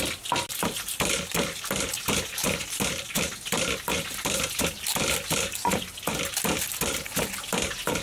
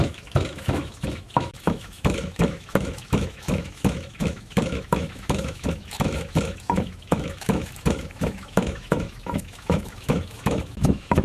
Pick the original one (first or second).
first